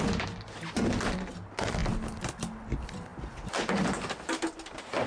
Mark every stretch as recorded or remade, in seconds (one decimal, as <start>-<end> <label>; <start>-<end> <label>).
0.0-5.1 recorded